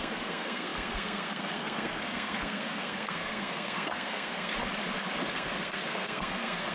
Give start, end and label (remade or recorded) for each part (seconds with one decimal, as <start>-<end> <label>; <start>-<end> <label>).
0.0-4.5 remade; 4.5-5.3 recorded; 5.3-6.7 remade